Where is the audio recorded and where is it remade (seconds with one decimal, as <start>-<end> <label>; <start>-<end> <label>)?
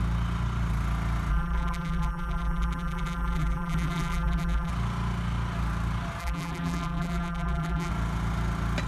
0.0-1.3 recorded; 1.3-4.7 remade; 4.7-6.2 recorded; 6.2-7.9 remade; 7.9-8.9 recorded